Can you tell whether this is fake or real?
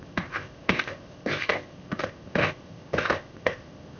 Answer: fake